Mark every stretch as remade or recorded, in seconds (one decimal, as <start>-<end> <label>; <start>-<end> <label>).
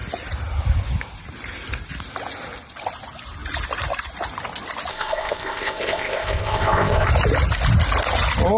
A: 0.0-4.9 recorded; 4.9-7.1 remade; 7.1-8.6 recorded